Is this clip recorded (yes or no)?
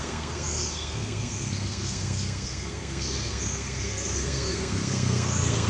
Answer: no